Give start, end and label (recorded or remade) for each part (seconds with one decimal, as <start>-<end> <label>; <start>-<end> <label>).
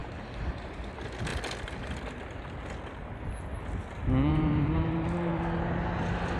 0.0-0.8 remade; 0.8-4.3 recorded; 4.3-5.3 remade; 5.3-6.4 recorded